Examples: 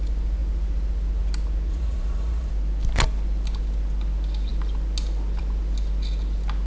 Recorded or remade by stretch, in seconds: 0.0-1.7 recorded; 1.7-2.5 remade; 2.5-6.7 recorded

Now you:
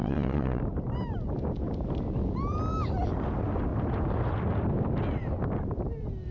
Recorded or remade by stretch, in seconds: 0.0-0.6 remade; 0.6-6.3 recorded

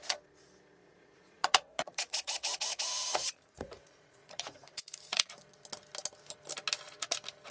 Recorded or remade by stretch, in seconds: 0.0-0.8 recorded; 0.8-5.3 remade; 5.3-7.5 recorded